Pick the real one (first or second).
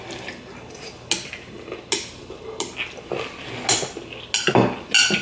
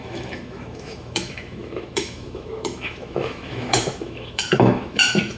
first